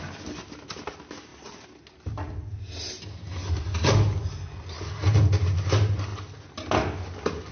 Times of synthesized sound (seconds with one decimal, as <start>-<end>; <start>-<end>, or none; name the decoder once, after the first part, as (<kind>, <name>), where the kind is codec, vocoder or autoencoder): none